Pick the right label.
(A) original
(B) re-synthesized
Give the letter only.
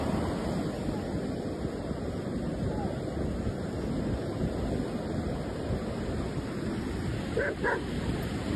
A